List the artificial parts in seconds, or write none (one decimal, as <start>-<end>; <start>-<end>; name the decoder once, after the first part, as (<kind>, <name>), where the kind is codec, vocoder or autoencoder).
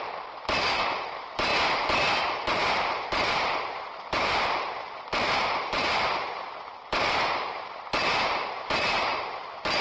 0.0-1.5 (vocoder, BigVGAN v2); 2.2-9.8